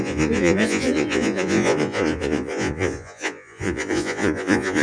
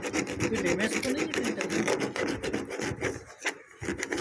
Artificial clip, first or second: first